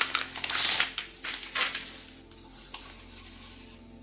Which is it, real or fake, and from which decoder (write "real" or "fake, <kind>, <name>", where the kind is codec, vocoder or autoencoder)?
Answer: real